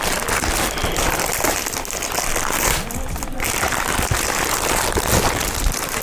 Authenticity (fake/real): real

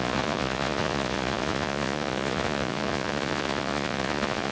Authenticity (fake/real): fake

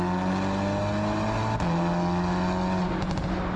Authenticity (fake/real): real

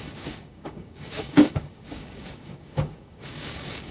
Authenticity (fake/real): fake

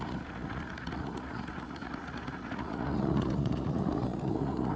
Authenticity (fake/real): fake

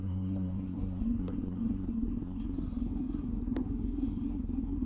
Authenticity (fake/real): fake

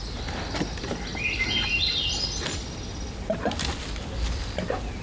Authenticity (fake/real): real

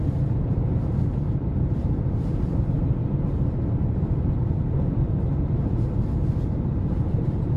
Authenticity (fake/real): fake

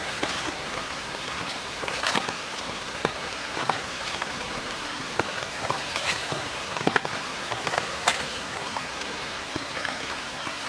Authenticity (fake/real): fake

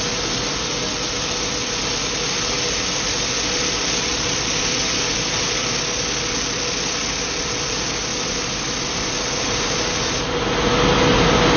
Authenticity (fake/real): real